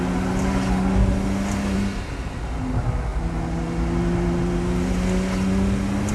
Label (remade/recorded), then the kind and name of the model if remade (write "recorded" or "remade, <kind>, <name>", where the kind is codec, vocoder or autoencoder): recorded